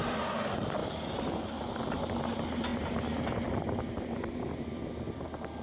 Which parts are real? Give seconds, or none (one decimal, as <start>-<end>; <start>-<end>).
0.0-5.6